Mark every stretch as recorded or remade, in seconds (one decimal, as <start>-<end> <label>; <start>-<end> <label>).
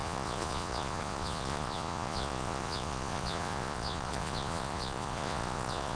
0.0-5.9 remade